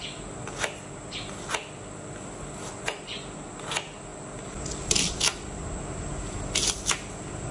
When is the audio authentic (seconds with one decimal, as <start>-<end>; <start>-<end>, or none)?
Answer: 0.0-7.5